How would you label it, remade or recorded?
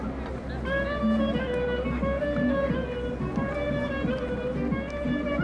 recorded